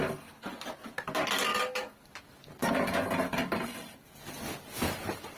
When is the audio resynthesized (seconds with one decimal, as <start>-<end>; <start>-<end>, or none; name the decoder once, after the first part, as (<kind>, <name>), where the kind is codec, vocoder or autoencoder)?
none